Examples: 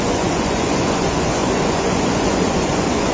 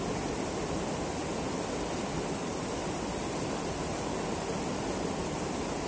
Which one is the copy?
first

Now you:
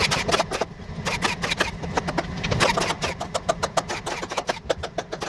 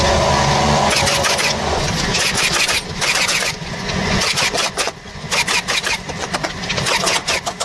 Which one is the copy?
second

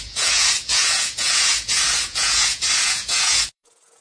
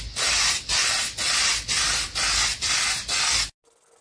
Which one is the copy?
first